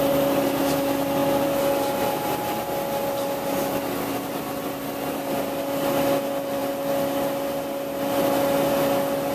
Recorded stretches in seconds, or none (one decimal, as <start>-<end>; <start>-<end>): 0.0-9.3

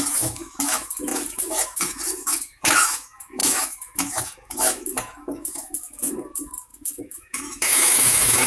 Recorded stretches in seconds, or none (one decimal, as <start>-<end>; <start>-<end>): none

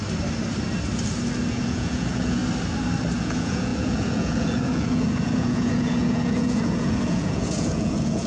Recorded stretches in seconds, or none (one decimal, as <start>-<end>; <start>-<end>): 0.0-1.5; 2.4-3.2

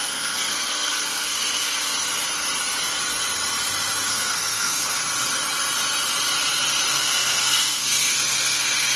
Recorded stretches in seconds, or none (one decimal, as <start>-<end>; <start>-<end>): 1.9-4.1; 5.0-6.9

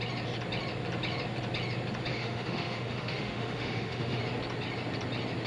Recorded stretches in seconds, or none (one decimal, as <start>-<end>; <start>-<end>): 0.0-2.1; 4.2-5.5

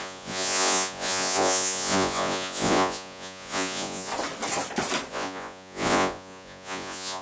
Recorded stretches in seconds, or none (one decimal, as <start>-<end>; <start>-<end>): 4.1-5.1